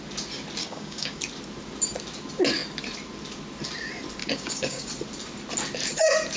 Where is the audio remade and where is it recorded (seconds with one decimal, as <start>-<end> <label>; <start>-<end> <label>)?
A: 0.0-0.6 recorded; 0.6-1.2 remade; 1.2-4.2 recorded; 4.2-4.9 remade; 4.9-6.4 recorded